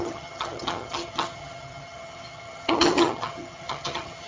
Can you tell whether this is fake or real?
fake